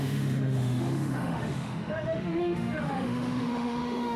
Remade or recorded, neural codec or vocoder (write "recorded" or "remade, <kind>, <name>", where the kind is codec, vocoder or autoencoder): remade, autoencoder, DAC-VAE